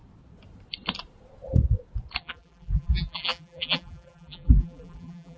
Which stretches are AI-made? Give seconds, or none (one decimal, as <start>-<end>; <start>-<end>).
2.2-5.4